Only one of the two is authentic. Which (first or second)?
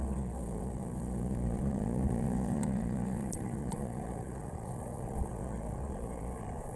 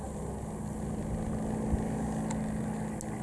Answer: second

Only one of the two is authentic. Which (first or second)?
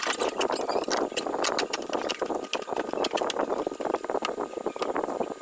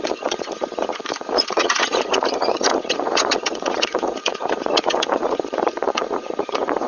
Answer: first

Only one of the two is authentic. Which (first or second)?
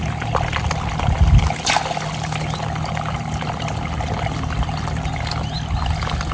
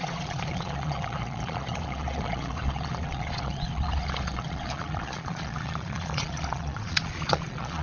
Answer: first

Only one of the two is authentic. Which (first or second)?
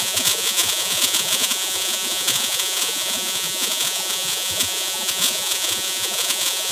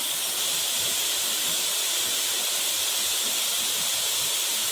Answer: second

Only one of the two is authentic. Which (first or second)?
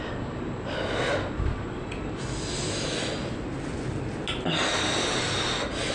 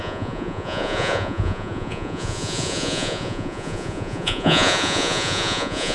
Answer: first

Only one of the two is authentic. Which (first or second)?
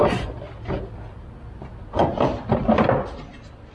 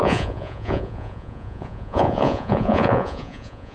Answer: first